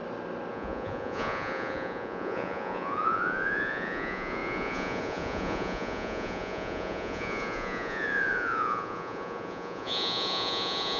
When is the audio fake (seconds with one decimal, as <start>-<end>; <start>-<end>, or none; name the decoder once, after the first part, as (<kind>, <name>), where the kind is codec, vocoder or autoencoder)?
0.5-11.0 (vocoder, Vocos)